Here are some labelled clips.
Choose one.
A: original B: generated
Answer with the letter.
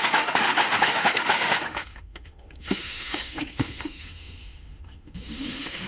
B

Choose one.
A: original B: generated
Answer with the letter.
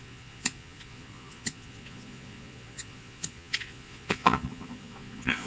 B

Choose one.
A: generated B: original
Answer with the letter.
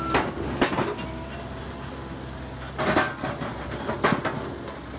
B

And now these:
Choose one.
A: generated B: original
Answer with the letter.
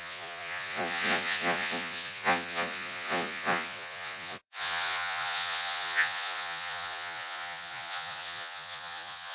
A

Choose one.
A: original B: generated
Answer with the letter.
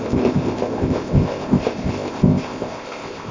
B